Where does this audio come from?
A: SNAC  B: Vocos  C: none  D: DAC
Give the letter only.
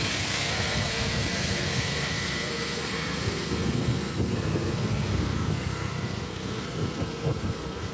A